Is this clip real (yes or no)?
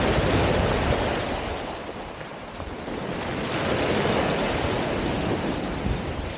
yes